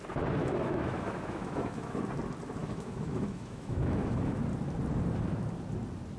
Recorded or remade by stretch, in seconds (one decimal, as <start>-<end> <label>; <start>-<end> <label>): 0.0-0.4 recorded; 0.4-2.0 remade; 2.0-2.6 recorded; 2.6-4.3 remade; 4.3-6.2 recorded